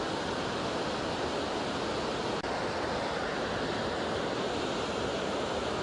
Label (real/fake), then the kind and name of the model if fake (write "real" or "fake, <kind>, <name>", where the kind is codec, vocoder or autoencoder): real